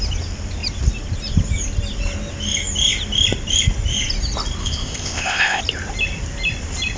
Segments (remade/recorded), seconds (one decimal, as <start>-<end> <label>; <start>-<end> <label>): 0.0-4.6 recorded; 4.6-5.6 remade; 5.6-7.0 recorded